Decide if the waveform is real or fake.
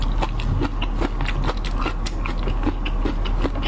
real